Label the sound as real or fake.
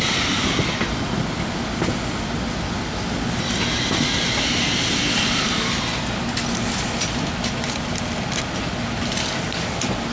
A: real